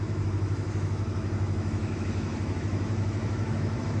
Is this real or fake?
fake